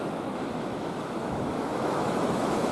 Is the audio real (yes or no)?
no